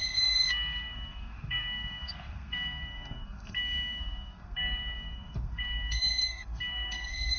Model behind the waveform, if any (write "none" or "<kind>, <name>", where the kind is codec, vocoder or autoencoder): codec, SNAC